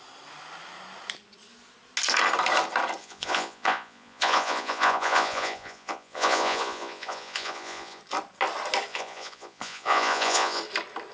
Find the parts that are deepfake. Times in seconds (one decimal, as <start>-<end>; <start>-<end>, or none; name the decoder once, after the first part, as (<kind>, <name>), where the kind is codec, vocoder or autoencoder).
3.0-8.0 (vocoder, Vocos); 8.9-10.6